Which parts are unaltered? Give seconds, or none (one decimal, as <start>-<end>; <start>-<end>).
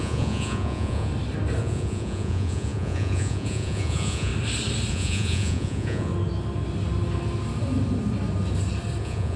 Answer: 1.1-1.6; 4.3-4.9; 6.1-9.0